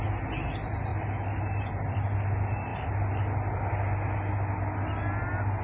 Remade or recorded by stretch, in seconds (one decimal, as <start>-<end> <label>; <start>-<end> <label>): 0.0-5.6 recorded